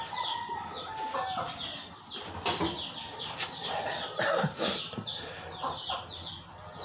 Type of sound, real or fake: real